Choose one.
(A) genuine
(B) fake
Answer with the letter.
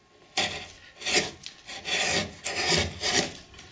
A